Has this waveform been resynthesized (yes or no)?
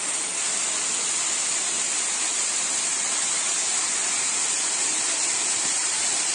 no